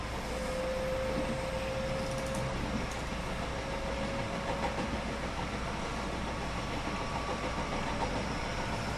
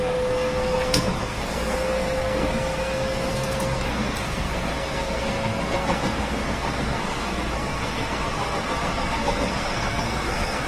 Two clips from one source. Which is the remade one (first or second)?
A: second